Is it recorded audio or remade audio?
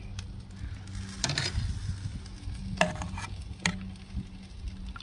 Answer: recorded